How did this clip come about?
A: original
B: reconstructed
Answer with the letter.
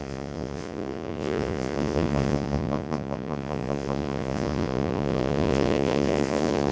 B